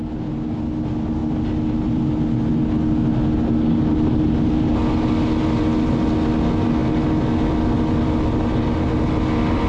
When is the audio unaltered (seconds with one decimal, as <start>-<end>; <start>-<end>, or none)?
0.0-9.7